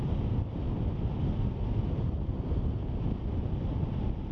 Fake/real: real